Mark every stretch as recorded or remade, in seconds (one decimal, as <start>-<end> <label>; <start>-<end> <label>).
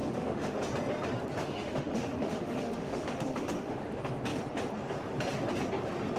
0.0-0.6 remade; 0.6-1.4 recorded; 1.4-3.8 remade; 3.8-6.2 recorded